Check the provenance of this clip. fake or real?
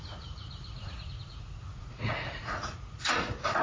fake